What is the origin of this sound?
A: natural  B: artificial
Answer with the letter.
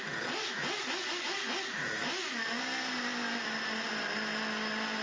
A